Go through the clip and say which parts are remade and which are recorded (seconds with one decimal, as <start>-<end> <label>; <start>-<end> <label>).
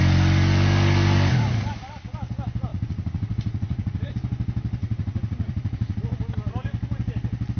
0.0-2.7 recorded; 2.7-4.1 remade; 4.1-4.8 recorded; 4.8-6.0 remade; 6.0-7.6 recorded